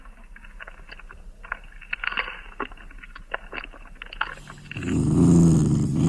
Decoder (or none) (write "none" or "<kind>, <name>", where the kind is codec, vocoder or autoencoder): none